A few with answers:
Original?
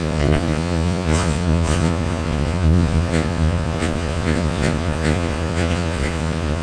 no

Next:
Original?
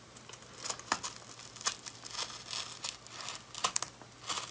yes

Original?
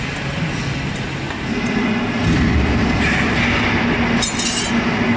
yes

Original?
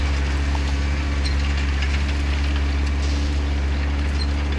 yes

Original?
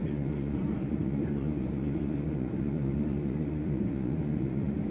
no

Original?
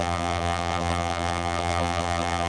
no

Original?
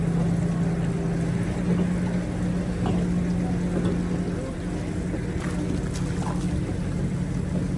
yes